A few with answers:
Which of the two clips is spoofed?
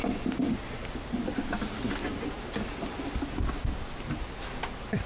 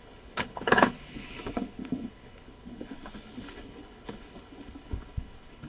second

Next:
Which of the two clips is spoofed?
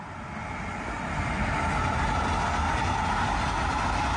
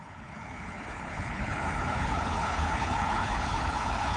second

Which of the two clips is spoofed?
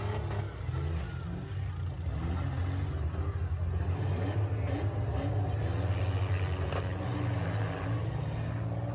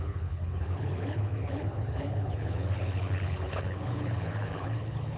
second